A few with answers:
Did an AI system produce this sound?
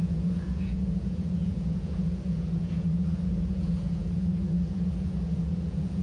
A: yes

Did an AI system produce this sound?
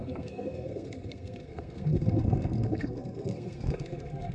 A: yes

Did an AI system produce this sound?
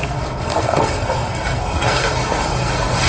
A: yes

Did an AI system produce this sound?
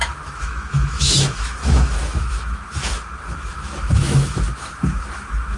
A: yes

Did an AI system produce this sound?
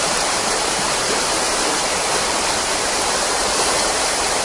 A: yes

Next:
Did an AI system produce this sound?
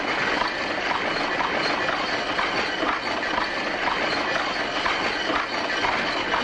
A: no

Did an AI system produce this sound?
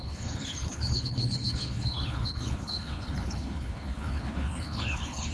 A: yes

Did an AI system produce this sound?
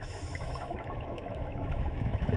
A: yes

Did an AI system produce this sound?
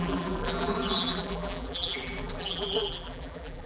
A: yes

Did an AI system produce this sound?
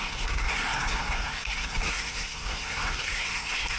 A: yes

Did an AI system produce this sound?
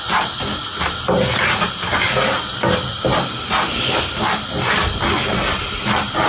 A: no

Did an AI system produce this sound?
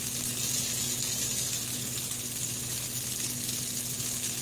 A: no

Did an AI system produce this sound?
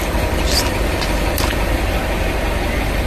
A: no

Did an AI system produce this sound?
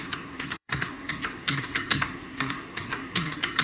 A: yes